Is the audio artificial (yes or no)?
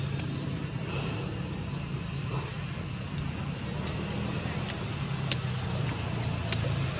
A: no